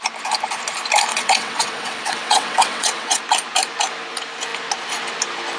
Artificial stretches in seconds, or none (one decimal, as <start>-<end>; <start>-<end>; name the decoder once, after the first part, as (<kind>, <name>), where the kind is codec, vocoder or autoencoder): 1.1-3.2 (vocoder, WaveNeXt)